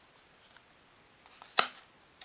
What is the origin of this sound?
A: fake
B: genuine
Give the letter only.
B